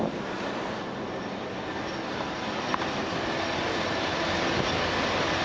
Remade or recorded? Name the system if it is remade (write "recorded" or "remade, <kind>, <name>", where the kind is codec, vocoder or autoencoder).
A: recorded